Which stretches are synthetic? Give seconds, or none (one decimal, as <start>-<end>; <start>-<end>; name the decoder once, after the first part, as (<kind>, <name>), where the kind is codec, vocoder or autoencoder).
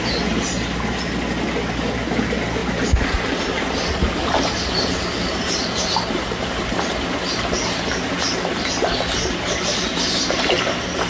none